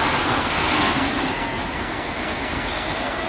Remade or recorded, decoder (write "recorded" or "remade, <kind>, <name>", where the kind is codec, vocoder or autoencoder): remade, codec, SNAC